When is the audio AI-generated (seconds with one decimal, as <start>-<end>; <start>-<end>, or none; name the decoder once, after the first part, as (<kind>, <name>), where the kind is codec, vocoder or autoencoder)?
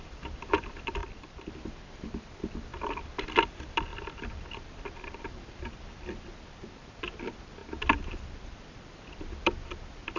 0.0-7.6 (vocoder, BigVGAN v2); 8.1-10.2